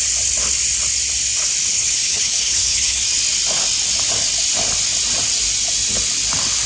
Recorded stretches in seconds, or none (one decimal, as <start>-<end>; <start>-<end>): 0.0-1.7; 3.0-6.7